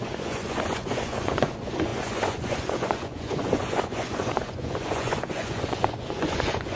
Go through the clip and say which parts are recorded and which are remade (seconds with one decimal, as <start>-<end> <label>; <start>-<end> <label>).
0.0-6.8 remade